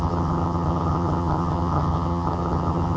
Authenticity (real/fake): fake